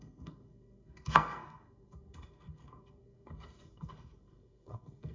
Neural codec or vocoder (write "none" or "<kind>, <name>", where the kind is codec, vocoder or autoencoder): codec, SNAC